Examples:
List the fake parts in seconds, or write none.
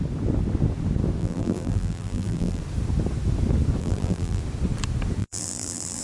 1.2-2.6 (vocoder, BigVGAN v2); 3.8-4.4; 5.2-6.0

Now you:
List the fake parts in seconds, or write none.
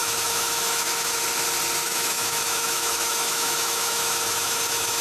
0.0-1.2 (autoencoder, DAC-VAE); 1.8-5.0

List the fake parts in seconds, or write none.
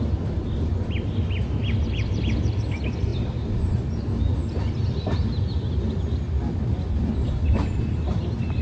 none